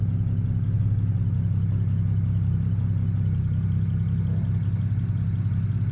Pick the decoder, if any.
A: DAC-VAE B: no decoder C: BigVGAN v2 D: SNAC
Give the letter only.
B